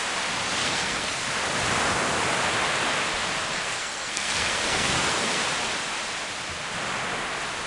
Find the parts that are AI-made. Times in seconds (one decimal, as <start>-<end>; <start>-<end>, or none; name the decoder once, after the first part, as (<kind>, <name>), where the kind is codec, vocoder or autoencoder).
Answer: 0.6-1.2 (codec, SNAC); 3.5-5.4